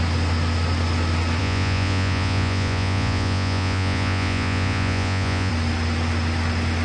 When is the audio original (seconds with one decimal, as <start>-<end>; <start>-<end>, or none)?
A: 0.0-1.4; 5.5-6.8